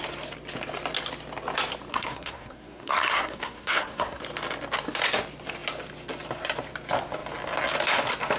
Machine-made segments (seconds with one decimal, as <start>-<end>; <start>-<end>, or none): 1.9-4.2